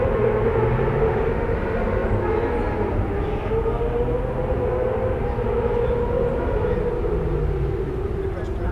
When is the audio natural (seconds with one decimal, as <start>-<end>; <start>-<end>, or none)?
0.0-8.7